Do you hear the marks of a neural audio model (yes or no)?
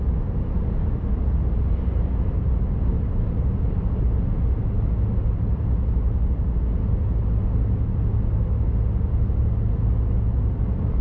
no